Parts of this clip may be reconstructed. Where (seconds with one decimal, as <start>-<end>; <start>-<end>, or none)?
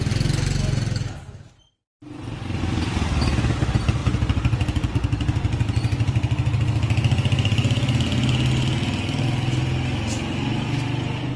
none